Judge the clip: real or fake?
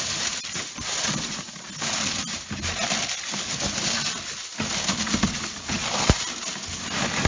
real